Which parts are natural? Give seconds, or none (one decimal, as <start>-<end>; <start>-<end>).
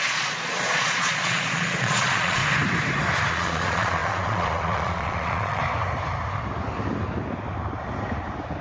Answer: 2.4-3.3; 5.6-8.6